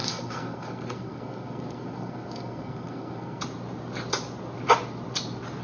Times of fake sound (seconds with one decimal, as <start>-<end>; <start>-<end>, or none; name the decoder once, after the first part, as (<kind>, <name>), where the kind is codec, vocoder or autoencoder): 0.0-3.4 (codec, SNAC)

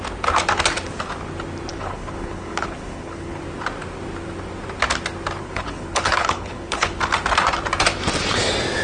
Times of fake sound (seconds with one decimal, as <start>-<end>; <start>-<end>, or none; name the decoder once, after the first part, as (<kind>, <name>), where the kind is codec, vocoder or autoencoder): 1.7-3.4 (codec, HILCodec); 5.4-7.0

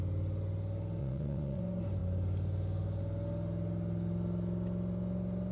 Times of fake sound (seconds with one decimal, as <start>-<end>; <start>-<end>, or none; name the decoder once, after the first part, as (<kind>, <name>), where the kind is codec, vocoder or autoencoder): 1.0-1.6 (vocoder, WaveNeXt)